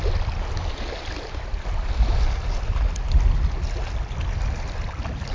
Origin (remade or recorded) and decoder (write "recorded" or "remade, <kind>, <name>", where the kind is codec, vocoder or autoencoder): recorded